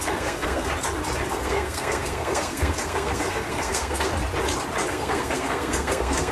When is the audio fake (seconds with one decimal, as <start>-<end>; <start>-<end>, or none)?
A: 0.0-0.7; 1.3-4.1; 4.9-6.3